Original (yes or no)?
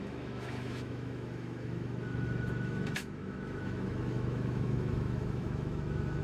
no